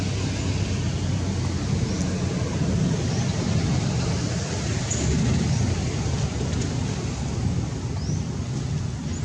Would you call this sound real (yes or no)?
yes